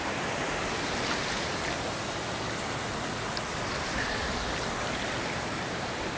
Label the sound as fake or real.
real